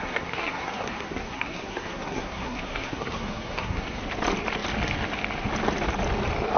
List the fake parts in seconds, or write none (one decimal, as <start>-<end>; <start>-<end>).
0.0-4.0